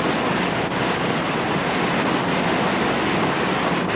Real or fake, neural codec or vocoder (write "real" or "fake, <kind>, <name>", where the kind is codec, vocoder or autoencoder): real